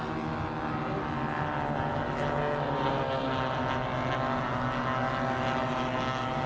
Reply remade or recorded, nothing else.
recorded